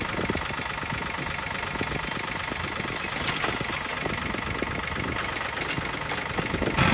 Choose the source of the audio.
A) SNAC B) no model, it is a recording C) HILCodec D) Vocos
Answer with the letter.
B